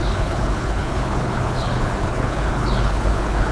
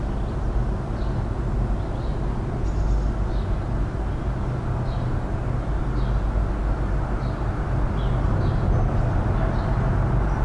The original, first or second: second